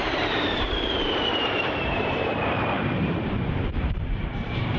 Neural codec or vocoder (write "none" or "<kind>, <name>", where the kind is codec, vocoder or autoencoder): vocoder, BigVGAN v2